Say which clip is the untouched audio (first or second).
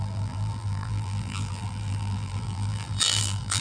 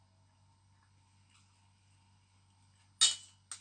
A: second